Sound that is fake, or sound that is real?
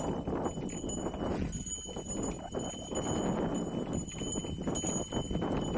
real